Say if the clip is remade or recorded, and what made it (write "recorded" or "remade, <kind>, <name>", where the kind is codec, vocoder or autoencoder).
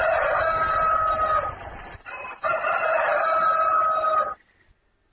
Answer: recorded